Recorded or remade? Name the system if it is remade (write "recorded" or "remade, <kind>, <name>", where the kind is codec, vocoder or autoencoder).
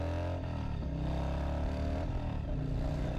recorded